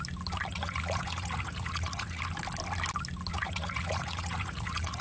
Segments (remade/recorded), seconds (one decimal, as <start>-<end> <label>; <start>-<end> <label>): 0.0-0.5 recorded; 0.5-2.2 remade; 2.2-3.3 recorded; 3.3-5.0 remade